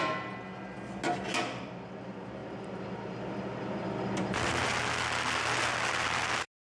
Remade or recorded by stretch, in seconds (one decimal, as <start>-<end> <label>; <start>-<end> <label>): 0.0-6.7 recorded